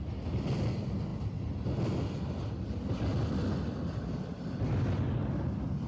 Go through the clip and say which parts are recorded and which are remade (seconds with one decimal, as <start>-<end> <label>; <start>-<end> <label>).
0.0-5.9 recorded